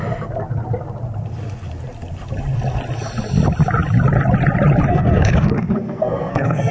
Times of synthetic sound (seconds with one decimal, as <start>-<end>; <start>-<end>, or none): 4.9-6.7